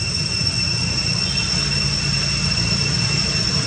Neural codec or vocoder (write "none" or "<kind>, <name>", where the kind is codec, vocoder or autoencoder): none